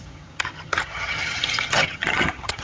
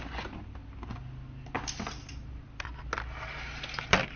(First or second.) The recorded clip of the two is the second